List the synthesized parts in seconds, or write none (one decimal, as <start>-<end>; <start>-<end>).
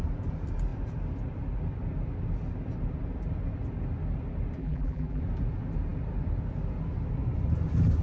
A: 4.6-5.2